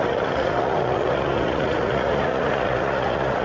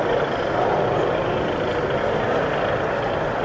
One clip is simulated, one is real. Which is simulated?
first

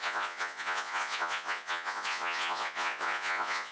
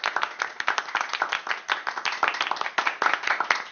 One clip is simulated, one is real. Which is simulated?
first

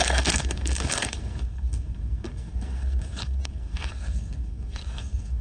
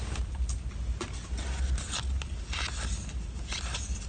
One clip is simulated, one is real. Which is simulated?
first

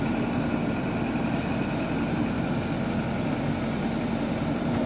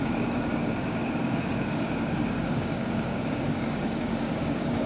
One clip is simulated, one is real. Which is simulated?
second